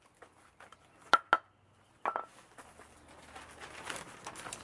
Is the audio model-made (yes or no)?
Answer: no